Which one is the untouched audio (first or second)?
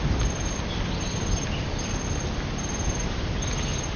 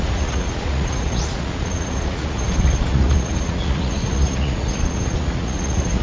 first